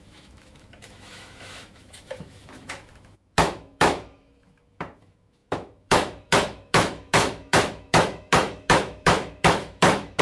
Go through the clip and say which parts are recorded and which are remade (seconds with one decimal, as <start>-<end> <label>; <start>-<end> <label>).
0.0-10.2 remade